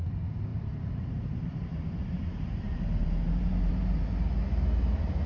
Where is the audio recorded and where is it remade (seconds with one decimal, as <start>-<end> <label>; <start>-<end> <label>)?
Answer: 0.0-0.5 recorded; 0.5-3.7 remade; 3.7-5.3 recorded